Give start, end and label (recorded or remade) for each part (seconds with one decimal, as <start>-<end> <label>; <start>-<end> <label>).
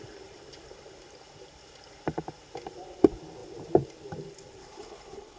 0.0-4.6 recorded; 4.6-5.4 remade